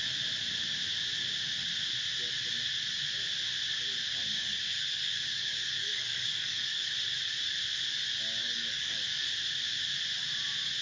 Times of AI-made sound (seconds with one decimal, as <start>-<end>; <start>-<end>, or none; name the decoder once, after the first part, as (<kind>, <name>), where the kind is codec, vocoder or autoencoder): 4.3-6.9 (codec, DAC); 8.4-9.3